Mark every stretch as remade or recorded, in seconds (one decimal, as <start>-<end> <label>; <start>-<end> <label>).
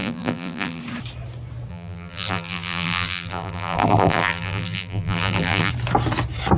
0.0-0.8 remade; 0.8-1.7 recorded; 1.7-5.7 remade; 5.7-6.6 recorded